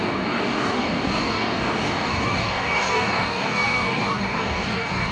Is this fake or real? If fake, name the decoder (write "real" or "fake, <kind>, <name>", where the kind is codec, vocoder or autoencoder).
fake, codec, DAC